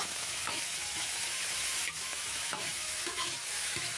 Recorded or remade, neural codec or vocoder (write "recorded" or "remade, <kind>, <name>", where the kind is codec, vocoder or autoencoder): remade, autoencoder, DAC-VAE